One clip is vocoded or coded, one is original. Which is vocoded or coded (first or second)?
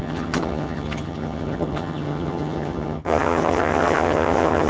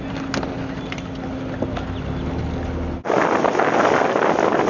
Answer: first